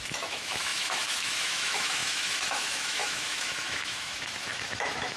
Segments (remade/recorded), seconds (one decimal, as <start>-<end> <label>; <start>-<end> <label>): 0.0-5.2 remade